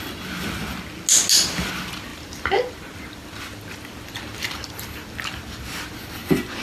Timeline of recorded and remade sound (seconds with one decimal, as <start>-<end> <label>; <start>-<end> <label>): 0.0-6.6 recorded